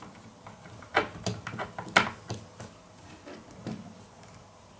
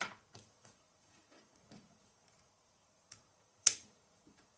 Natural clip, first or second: first